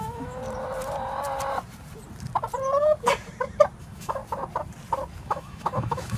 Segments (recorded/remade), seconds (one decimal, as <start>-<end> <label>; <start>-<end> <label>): 0.0-0.4 remade; 0.4-3.8 recorded; 3.8-4.2 remade; 4.2-5.2 recorded; 5.2-6.2 remade